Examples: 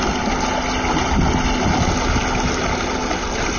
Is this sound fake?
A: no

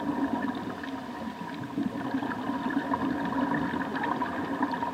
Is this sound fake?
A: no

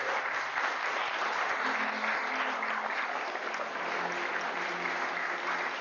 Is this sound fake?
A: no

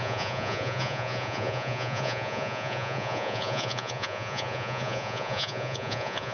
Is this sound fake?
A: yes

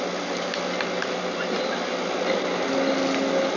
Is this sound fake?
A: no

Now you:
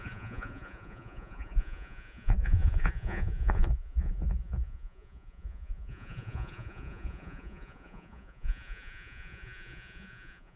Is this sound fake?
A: yes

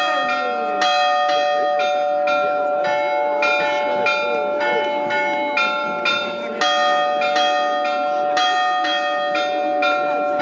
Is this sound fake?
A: no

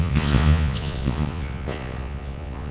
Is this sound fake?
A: yes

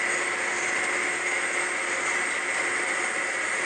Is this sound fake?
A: no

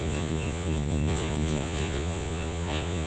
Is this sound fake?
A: yes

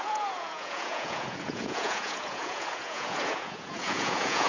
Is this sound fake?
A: yes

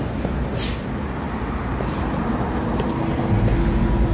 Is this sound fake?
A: no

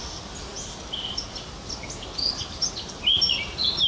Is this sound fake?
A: no